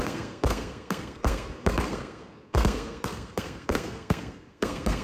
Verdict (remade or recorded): remade